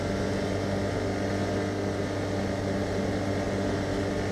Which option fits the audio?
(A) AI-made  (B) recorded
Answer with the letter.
B